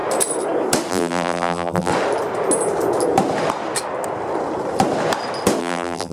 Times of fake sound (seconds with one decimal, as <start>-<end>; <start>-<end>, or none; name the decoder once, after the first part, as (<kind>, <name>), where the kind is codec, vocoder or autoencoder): 0.9-1.9 (vocoder, BigVGAN v2); 5.6-6.1